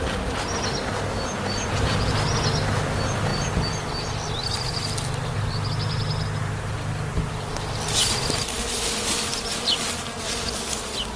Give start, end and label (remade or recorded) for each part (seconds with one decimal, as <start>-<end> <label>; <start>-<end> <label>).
0.0-11.2 recorded